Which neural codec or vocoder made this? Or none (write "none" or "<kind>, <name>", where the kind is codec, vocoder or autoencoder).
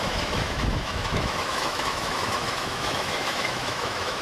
autoencoder, DAC-VAE